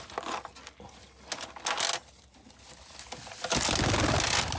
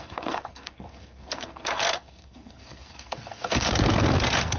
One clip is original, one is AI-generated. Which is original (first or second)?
first